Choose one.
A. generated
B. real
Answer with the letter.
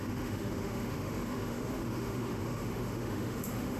A